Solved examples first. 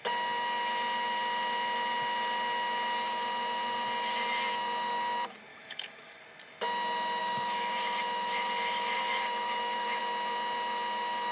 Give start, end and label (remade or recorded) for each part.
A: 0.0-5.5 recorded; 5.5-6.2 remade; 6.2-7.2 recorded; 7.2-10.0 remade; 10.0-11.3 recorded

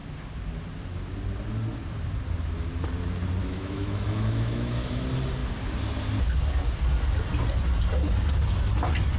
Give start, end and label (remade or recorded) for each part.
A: 0.0-3.4 recorded; 3.4-5.0 remade; 5.0-9.2 recorded

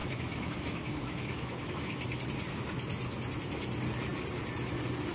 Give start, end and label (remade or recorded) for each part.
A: 0.0-2.2 remade; 2.2-5.1 recorded

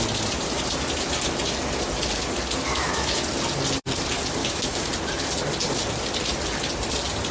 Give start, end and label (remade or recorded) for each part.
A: 0.0-2.7 recorded; 2.7-3.2 remade; 3.2-4.4 recorded; 4.4-4.9 remade; 4.9-7.3 recorded

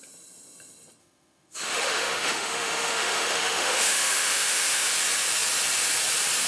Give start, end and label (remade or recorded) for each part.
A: 0.0-1.0 recorded; 1.0-4.9 remade; 4.9-6.5 recorded

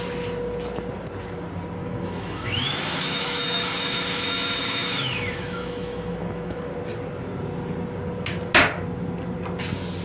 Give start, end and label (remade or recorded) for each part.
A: 0.0-1.8 recorded; 1.8-6.7 remade; 6.7-10.0 recorded

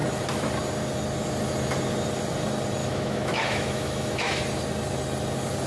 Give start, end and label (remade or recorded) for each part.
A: 0.0-2.8 recorded; 2.8-4.4 remade; 4.4-5.7 recorded

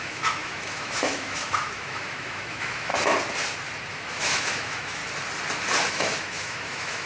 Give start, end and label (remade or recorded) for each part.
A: 0.0-2.9 remade; 2.9-3.9 recorded; 3.9-5.0 remade; 5.0-5.9 recorded; 5.9-7.1 remade